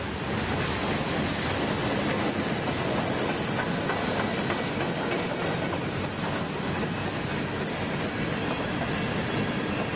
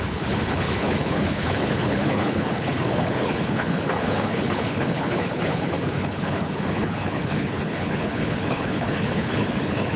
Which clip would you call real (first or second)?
first